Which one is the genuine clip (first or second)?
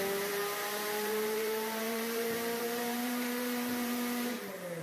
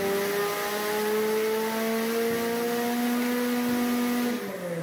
second